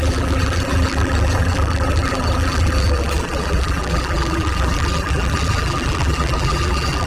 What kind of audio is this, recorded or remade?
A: remade